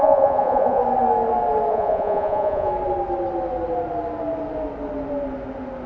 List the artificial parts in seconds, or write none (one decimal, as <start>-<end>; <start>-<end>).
0.0-0.8; 1.7-2.7